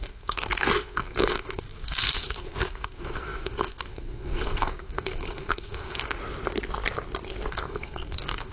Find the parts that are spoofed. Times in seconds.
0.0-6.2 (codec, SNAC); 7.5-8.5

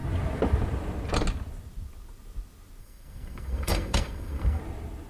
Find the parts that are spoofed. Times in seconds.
2.8-4.6 (codec, SNAC)